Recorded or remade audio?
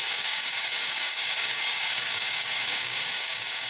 remade